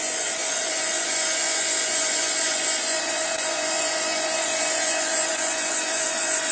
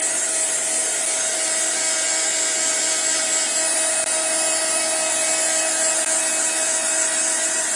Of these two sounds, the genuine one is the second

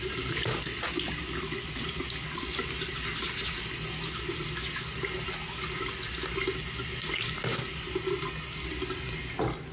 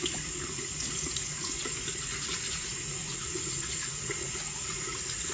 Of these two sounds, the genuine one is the first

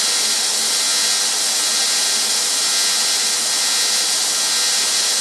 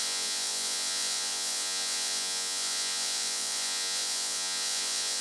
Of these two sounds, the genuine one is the first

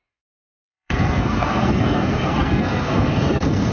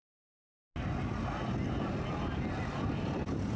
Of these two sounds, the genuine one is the second